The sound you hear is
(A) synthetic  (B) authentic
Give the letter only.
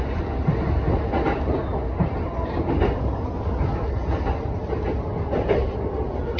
B